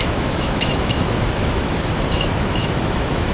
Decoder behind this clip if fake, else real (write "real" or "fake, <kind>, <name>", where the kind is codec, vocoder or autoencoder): fake, autoencoder, DAC-VAE